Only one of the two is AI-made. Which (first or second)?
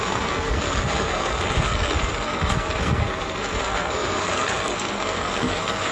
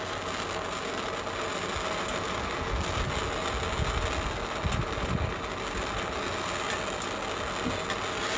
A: first